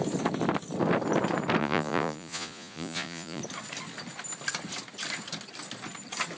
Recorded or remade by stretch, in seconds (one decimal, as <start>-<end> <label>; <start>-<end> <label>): 0.0-1.6 recorded; 1.6-3.4 remade; 3.4-6.4 recorded